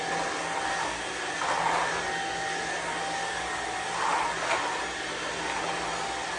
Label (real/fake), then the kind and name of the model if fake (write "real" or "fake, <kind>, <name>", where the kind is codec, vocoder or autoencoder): real